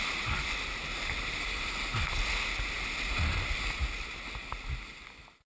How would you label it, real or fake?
real